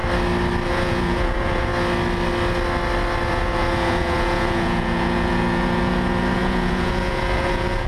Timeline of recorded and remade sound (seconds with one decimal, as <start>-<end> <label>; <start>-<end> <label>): 0.0-0.7 recorded; 0.7-1.7 remade; 1.7-3.3 recorded; 3.3-7.9 remade